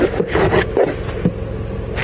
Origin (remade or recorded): recorded